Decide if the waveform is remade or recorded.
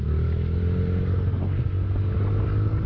recorded